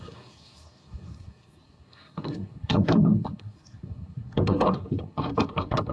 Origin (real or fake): fake